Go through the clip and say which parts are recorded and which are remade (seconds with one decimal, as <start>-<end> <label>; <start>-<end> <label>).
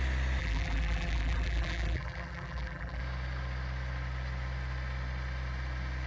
0.0-0.4 recorded; 0.4-3.0 remade; 3.0-6.1 recorded